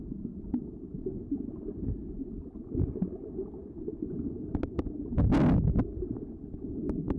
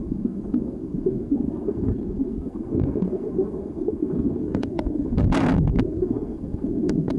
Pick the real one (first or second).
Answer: first